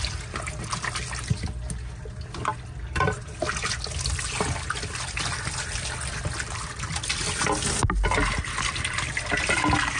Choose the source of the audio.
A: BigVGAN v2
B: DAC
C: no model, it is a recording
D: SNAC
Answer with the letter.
C